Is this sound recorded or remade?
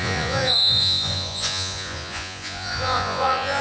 remade